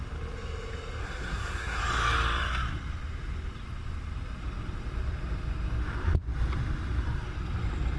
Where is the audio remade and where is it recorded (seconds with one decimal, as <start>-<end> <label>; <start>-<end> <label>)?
0.0-1.0 recorded; 1.0-1.8 remade; 1.8-8.0 recorded